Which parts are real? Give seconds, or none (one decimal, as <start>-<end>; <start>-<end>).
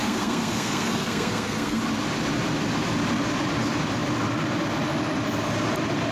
1.8-6.1